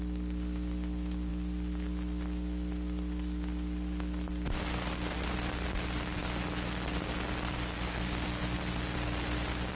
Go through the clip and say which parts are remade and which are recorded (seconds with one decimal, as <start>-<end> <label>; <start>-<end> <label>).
0.0-9.7 recorded